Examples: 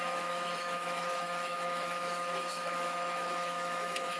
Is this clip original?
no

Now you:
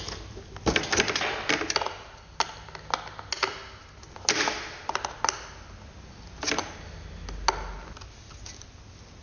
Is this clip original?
yes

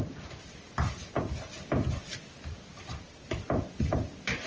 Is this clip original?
yes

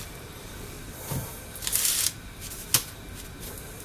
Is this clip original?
yes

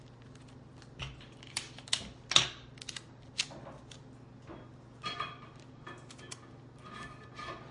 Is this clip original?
yes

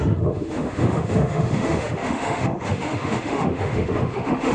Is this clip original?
no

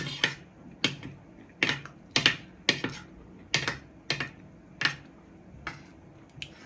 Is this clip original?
yes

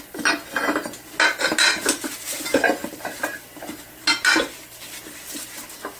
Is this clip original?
yes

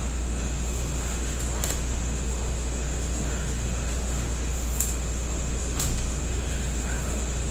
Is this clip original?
no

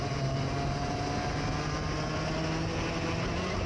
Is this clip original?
yes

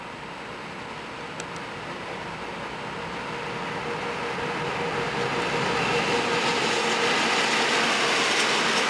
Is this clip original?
yes